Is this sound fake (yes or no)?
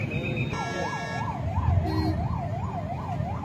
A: no